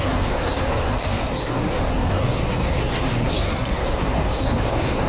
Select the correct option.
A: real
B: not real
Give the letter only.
B